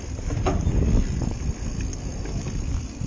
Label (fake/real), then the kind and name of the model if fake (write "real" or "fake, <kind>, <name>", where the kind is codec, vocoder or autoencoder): real